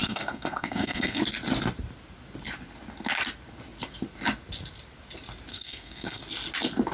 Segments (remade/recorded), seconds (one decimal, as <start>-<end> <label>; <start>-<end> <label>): 0.0-1.2 remade; 1.2-5.5 recorded; 5.5-6.2 remade; 6.2-6.9 recorded